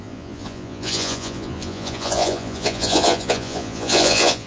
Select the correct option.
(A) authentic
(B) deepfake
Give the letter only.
B